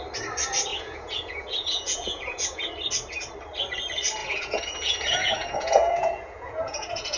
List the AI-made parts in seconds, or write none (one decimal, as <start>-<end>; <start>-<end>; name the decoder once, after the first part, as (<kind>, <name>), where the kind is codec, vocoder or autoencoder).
0.7-2.7 (vocoder, Vocos); 4.2-7.2